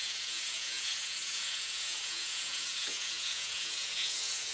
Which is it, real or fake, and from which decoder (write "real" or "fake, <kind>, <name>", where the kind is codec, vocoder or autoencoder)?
fake, vocoder, Vocos